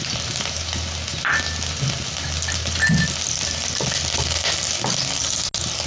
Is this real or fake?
real